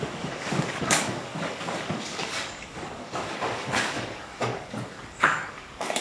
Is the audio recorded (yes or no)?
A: no